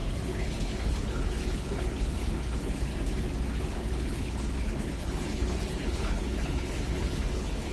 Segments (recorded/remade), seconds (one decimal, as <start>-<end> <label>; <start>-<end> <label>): 0.0-2.9 remade; 2.9-3.6 recorded; 3.6-7.7 remade